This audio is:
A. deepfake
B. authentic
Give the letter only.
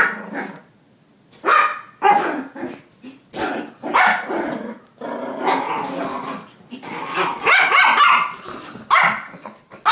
B